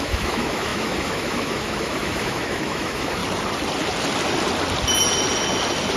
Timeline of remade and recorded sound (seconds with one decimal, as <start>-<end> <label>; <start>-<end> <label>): 0.0-3.2 remade; 3.2-6.0 recorded